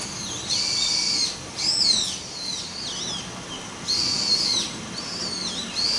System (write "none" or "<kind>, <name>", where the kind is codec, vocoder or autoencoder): none